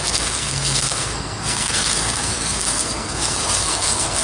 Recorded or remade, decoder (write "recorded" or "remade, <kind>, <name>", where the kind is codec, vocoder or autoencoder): remade, codec, SNAC